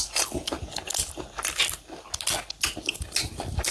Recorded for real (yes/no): yes